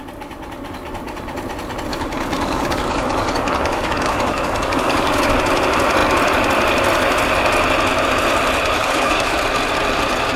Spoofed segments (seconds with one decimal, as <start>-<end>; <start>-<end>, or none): 1.9-5.2; 8.8-9.4